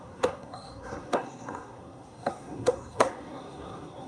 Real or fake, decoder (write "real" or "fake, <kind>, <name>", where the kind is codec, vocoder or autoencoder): fake, codec, SNAC